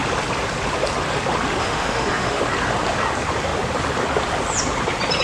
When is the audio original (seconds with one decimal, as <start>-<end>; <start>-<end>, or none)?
0.0-1.6; 2.4-5.2

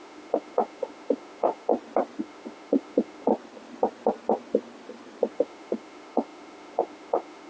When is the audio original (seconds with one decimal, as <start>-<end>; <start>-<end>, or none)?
1.7-2.2; 3.3-5.3

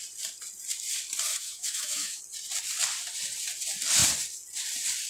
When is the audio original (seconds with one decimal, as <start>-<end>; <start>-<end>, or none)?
0.0-1.3; 2.2-5.1

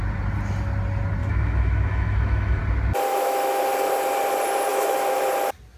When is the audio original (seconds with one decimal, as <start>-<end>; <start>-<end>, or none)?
0.0-1.2; 2.6-3.1; 3.6-4.7; 5.2-5.8

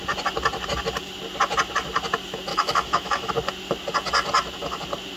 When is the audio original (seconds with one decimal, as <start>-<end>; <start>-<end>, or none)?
0.0-2.5; 3.3-5.2